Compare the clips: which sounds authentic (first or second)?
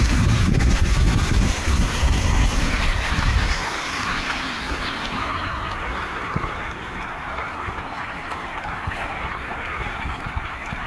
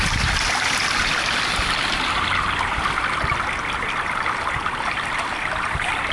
second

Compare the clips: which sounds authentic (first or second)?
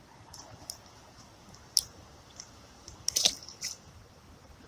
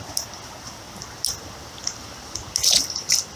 second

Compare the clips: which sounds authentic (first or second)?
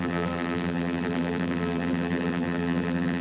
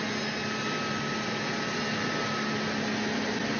second